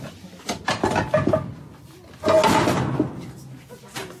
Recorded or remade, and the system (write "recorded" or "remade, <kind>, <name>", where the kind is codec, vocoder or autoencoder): recorded